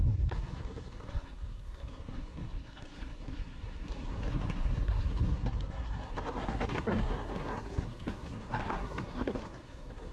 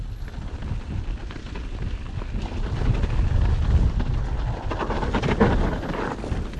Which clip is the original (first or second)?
second